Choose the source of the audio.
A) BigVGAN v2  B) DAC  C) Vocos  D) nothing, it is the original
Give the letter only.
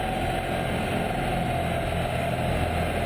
D